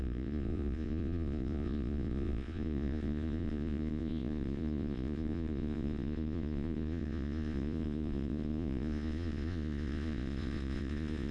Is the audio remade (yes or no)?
yes